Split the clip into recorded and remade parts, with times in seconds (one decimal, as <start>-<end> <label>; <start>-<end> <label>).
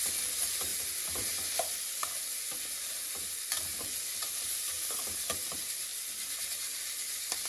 0.0-7.5 recorded